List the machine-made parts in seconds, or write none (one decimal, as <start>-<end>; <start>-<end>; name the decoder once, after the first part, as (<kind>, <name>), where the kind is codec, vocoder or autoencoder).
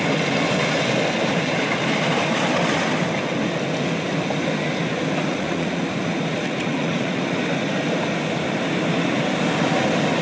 5.3-5.8 (vocoder, Vocos); 6.3-7.2